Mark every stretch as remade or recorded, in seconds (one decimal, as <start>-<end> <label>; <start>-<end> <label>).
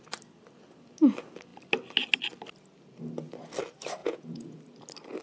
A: 0.0-4.0 recorded; 4.0-4.6 remade; 4.6-5.2 recorded